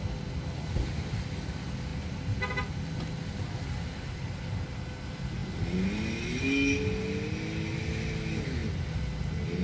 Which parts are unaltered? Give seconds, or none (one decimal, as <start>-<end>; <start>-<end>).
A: 0.0-9.6

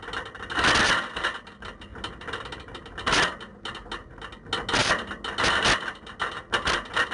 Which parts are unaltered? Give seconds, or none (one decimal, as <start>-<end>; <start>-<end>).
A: 0.0-7.1

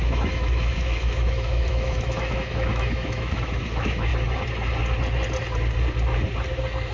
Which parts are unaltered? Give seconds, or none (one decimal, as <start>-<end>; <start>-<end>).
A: 4.1-6.9